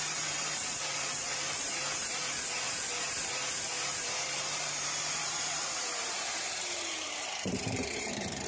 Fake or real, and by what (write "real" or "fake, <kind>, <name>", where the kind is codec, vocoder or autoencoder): fake, vocoder, BigVGAN v2